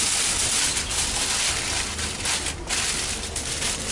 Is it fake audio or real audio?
real